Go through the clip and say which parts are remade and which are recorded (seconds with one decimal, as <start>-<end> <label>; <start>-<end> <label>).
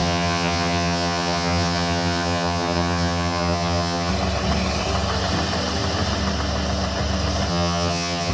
0.0-4.1 remade; 4.1-7.5 recorded; 7.5-8.3 remade